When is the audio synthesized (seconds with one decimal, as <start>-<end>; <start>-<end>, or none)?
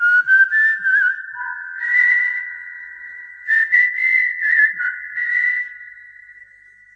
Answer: 1.4-5.6